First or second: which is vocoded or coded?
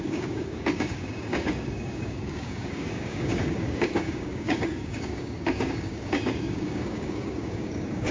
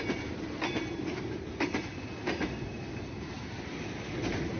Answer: first